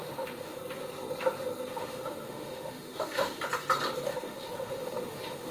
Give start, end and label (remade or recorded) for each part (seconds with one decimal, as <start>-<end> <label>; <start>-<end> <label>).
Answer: 0.0-0.6 remade; 0.6-1.7 recorded; 1.7-3.4 remade; 3.4-4.1 recorded; 4.1-5.5 remade